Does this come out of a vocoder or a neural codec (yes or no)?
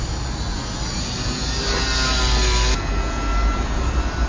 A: no